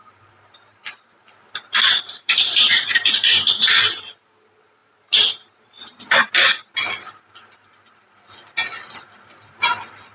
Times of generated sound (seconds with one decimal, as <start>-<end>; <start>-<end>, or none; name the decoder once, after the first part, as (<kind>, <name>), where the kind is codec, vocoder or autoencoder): 0.0-3.8 (vocoder, BigVGAN v2); 4.8-6.3